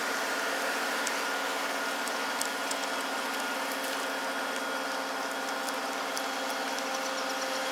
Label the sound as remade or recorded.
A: recorded